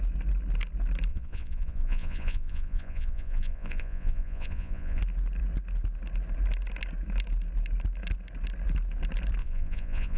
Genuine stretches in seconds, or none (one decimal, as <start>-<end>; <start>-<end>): 0.0-1.1; 5.0-9.4